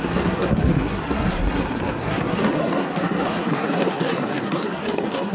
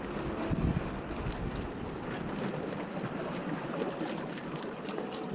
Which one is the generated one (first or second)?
first